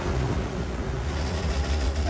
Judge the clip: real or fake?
fake